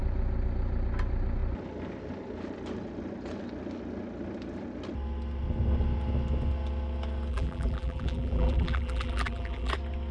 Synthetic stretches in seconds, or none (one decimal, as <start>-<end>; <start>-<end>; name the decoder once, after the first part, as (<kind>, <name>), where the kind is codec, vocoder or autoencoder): 7.3-9.7 (vocoder, BigVGAN v2)